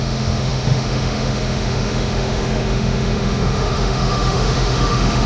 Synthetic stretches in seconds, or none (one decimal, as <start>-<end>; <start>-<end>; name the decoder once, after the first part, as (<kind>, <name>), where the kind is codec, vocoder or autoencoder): 0.0-5.3 (autoencoder, DAC-VAE)